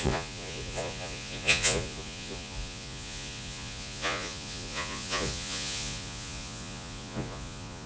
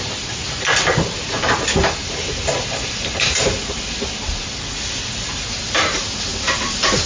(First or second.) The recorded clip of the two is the second